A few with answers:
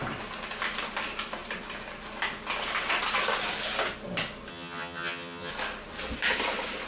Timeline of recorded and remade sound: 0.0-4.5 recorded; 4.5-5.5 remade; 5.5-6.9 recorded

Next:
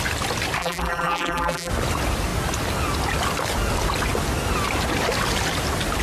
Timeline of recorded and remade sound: 0.0-0.6 recorded; 0.6-1.7 remade; 1.7-6.0 recorded

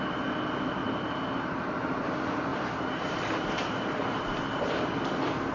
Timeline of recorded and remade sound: 0.0-0.8 recorded; 0.8-2.1 remade; 2.1-2.5 recorded; 2.5-4.2 remade; 4.2-5.5 recorded

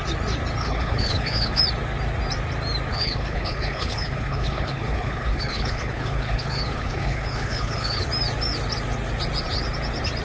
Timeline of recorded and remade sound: 0.0-0.6 recorded; 0.6-1.6 remade; 1.6-2.9 recorded; 2.9-8.1 remade; 8.1-10.2 recorded

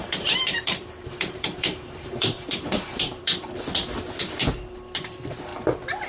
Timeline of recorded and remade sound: 0.0-3.4 remade; 3.4-5.5 recorded; 5.5-6.1 remade

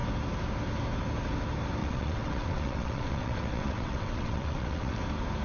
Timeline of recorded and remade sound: 0.0-1.8 recorded; 1.8-5.0 remade; 5.0-5.4 recorded